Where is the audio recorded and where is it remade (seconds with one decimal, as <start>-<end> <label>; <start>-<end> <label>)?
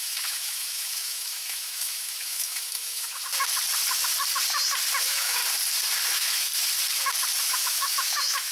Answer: 0.0-3.3 remade; 3.3-5.0 recorded; 5.0-5.4 remade; 5.4-6.1 recorded; 6.1-6.5 remade; 6.5-7.4 recorded; 7.4-8.5 remade